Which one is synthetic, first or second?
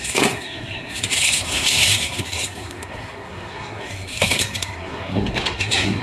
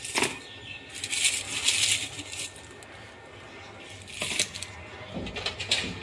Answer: first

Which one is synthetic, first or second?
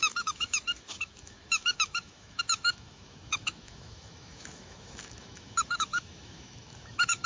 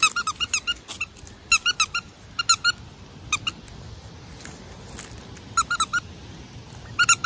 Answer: first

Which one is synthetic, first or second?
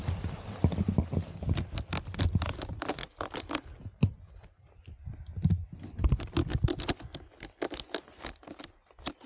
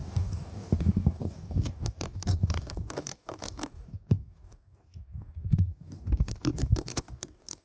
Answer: second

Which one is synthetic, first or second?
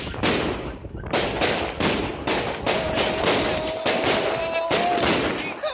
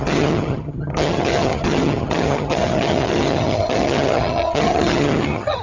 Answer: second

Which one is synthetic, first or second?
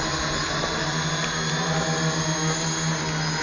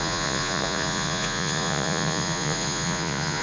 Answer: second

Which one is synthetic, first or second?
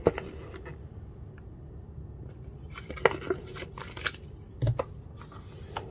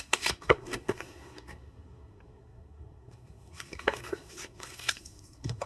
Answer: second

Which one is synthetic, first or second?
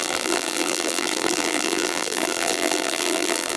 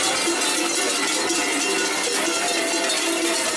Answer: first